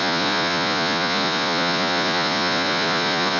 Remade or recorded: remade